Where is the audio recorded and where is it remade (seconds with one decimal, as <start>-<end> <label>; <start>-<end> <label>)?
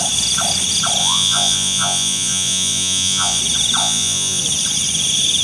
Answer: 0.0-1.0 recorded; 1.0-3.4 remade; 3.4-3.8 recorded; 3.8-4.4 remade; 4.4-5.4 recorded